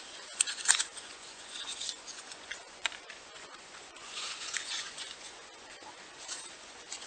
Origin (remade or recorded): remade